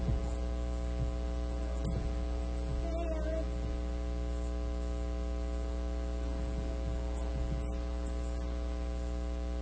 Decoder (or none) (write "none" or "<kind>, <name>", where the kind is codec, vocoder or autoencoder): none